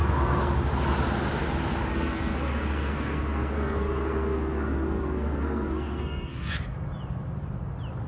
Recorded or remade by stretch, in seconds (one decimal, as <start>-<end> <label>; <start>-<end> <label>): 0.0-0.5 remade; 0.5-1.9 recorded; 1.9-6.6 remade; 6.6-8.1 recorded